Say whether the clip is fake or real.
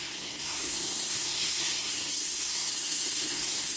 fake